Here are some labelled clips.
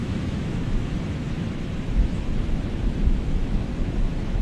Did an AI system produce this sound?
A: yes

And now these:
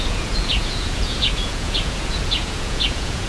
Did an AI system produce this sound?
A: yes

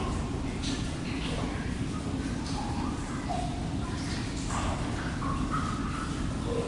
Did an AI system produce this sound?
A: no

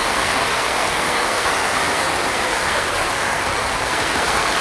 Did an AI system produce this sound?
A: yes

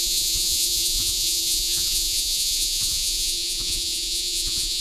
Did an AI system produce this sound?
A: yes